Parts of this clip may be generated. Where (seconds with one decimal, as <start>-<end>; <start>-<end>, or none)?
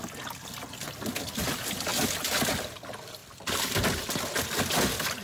none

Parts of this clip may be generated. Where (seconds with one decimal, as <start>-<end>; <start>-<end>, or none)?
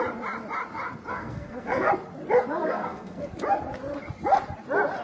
1.1-1.9; 2.6-3.3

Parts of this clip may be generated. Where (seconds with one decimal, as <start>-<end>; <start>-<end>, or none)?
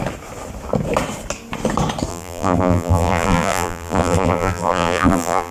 2.1-5.5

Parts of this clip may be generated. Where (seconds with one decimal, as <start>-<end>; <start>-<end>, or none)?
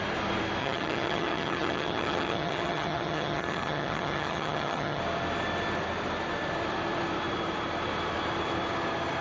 0.6-5.0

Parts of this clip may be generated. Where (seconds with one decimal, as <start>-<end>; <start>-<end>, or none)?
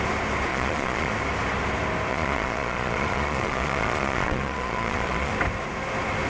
0.5-1.1; 2.1-5.3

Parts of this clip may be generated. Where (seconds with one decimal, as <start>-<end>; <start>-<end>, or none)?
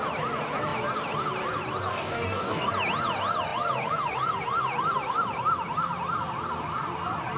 1.9-2.7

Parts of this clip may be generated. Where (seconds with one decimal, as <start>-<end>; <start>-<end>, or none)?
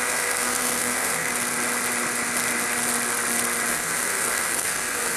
0.0-1.3; 3.7-5.2